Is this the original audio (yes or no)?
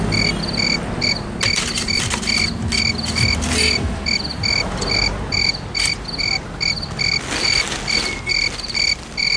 yes